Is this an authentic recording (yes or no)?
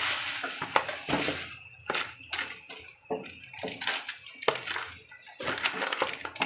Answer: yes